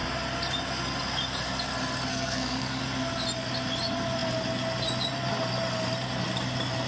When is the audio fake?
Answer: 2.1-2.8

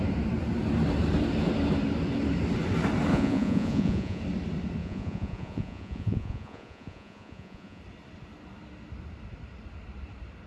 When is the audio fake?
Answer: 3.1-4.2; 4.8-7.8

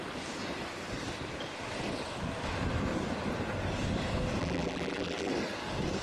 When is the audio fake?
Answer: 4.4-5.3

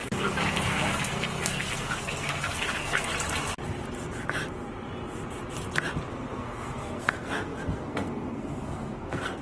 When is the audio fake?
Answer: 0.0-3.1; 6.1-9.4

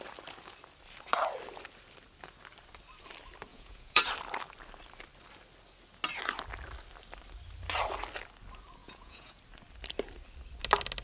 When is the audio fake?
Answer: 3.5-4.1; 8.8-9.4

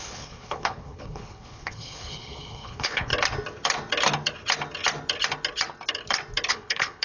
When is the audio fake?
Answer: 0.0-3.1; 6.5-7.0